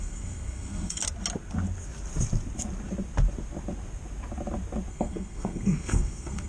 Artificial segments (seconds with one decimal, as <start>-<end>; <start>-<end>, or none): 0.0-1.0; 4.9-6.5